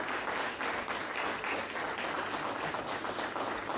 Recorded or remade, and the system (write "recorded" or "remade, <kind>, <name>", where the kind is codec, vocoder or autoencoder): recorded